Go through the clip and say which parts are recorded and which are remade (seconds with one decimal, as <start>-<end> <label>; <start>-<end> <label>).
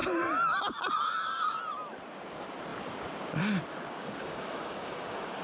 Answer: 0.0-4.0 recorded; 4.0-5.4 remade